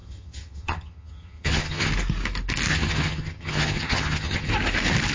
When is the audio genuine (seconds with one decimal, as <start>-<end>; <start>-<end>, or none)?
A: 1.9-2.7; 4.5-5.1